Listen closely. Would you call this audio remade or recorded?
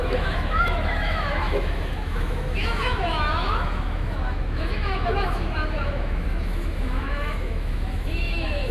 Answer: remade